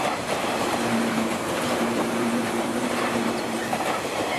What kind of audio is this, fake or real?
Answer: fake